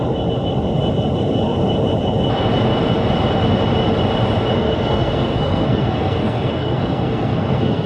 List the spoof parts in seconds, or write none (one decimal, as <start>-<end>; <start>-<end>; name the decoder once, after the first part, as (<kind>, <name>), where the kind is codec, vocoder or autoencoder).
4.5-7.9 (codec, SNAC)